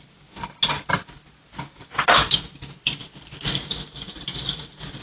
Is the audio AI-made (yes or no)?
no